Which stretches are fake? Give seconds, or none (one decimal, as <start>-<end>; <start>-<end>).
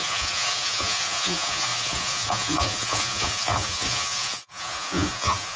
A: 0.0-5.6